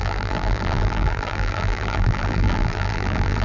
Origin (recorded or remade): remade